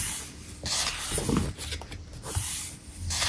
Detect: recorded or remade recorded